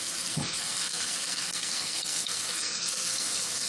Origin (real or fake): fake